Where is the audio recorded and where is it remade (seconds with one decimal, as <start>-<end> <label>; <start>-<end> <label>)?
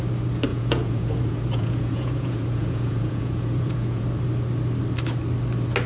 0.0-0.5 recorded; 0.5-4.0 remade; 4.0-5.9 recorded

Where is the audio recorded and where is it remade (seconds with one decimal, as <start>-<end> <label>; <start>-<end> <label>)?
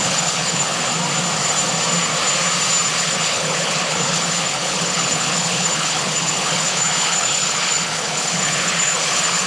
0.0-0.9 remade; 0.9-2.9 recorded; 2.9-9.5 remade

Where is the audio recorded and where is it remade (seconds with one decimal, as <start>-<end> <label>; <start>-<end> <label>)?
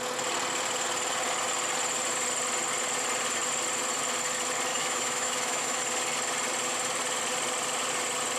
0.0-4.7 recorded; 4.7-5.8 remade; 5.8-8.4 recorded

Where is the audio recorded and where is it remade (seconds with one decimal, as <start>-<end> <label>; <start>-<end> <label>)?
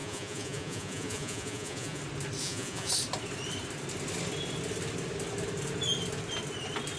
0.0-2.0 remade; 2.0-2.4 recorded; 2.4-2.9 remade; 2.9-7.0 recorded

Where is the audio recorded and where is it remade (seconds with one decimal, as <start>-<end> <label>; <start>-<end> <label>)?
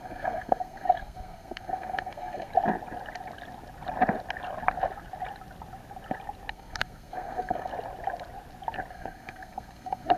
0.0-2.5 remade; 2.5-6.5 recorded; 6.5-7.7 remade; 7.7-8.9 recorded; 8.9-10.2 remade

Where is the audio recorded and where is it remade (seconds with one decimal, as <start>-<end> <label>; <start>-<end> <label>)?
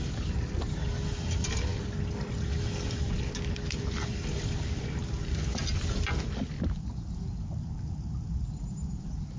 0.0-9.4 recorded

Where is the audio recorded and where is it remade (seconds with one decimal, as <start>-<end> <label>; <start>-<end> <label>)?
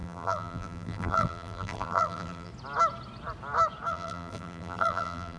0.0-2.5 remade; 2.5-3.9 recorded; 3.9-5.4 remade